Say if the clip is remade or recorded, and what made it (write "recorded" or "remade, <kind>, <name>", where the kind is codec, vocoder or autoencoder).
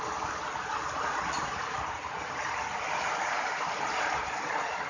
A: recorded